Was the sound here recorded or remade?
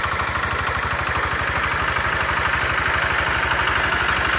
recorded